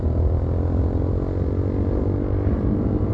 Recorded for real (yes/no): yes